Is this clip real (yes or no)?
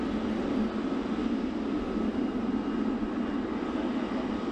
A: yes